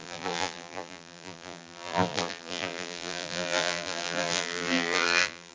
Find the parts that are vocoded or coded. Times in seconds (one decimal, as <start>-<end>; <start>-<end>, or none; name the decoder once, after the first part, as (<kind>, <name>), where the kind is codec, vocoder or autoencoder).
0.0-5.5 (vocoder, BigVGAN v2)